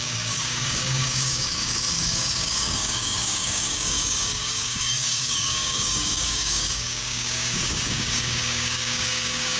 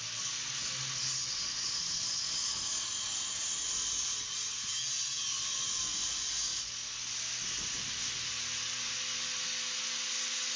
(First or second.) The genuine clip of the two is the second